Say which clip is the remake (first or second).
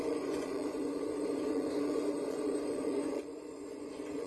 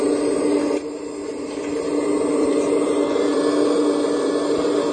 first